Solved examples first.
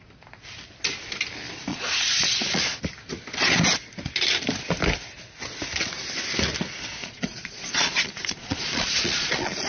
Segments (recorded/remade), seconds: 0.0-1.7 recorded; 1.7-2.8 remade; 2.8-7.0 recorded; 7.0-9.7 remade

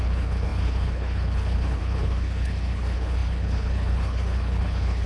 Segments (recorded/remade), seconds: 0.0-5.1 remade

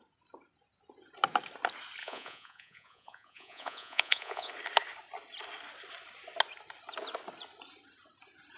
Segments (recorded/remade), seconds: 0.0-2.0 recorded; 2.0-4.5 remade; 4.5-8.6 recorded

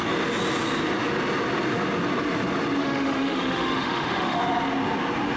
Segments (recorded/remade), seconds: 0.0-2.8 recorded; 2.8-4.4 remade; 4.4-5.4 recorded

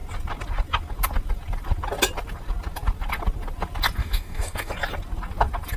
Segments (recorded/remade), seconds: 0.0-4.0 recorded; 4.0-4.7 remade; 4.7-5.8 recorded

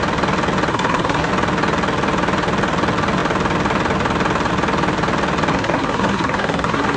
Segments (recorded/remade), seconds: 0.0-0.7 recorded; 0.7-1.3 remade; 1.3-5.5 recorded; 5.5-7.0 remade

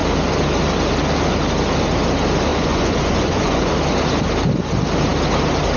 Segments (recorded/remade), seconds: 0.0-2.5 recorded; 2.5-3.7 remade; 3.7-5.8 recorded

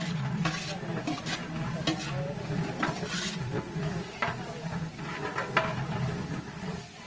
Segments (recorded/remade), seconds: 0.0-0.9 recorded; 0.9-4.8 remade; 4.8-5.7 recorded; 5.7-7.1 remade